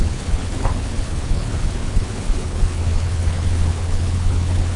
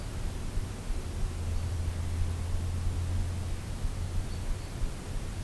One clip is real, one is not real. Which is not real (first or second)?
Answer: first